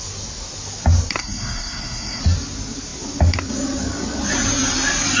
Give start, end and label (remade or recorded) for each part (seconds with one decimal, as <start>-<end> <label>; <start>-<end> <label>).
0.0-1.2 recorded; 1.2-2.2 remade; 2.2-5.2 recorded